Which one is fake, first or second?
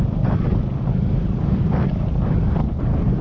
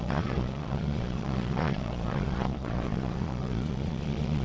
second